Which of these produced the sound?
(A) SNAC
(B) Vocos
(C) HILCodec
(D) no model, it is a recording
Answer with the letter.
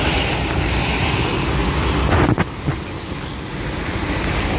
D